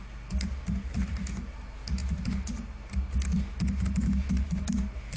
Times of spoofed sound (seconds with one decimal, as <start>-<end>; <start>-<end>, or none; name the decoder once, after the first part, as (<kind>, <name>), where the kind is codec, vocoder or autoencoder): none